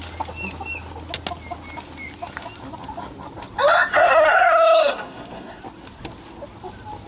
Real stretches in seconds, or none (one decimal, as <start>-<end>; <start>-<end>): 0.0-3.9; 5.6-7.1